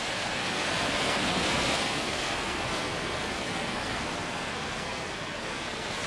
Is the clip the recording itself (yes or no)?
no